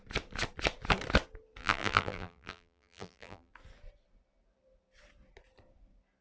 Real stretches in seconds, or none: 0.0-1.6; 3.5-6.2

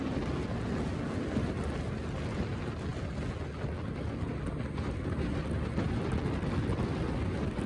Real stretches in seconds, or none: 0.0-7.7

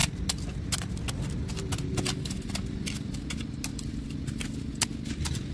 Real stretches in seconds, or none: 0.0-3.7; 4.2-5.5

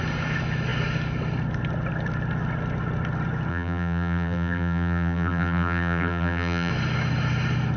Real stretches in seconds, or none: 0.0-3.5; 6.7-7.8

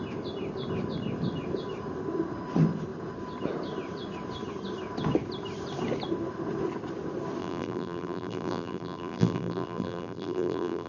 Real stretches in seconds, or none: 0.0-7.4